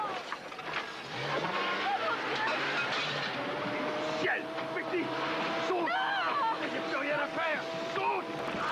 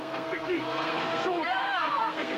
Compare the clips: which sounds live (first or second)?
first